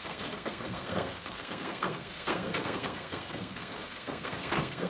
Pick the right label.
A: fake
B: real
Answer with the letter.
A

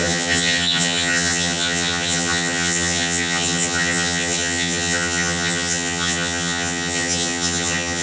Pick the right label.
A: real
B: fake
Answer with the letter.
B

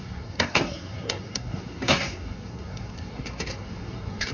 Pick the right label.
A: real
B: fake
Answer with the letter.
B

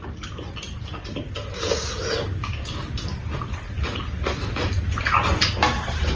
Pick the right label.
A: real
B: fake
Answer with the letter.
A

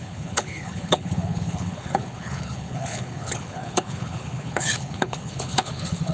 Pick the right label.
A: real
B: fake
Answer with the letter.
B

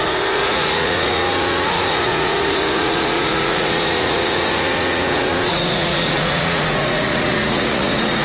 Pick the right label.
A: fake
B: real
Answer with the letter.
A